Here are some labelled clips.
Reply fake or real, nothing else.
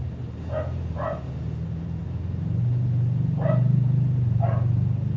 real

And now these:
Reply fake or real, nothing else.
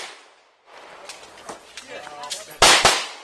real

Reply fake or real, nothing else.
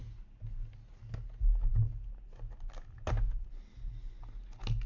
real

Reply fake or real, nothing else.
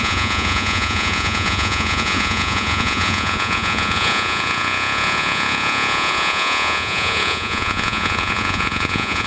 fake